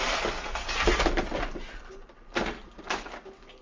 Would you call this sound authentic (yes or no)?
yes